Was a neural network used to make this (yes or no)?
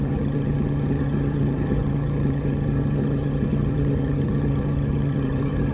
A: yes